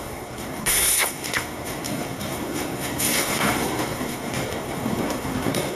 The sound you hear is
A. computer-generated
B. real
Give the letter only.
A